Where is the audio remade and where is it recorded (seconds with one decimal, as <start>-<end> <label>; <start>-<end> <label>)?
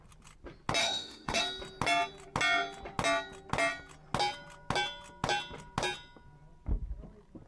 0.0-0.8 recorded; 0.8-1.4 remade; 1.4-7.5 recorded